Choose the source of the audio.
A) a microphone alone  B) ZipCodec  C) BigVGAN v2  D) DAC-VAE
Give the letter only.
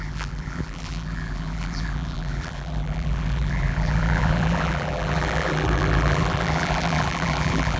C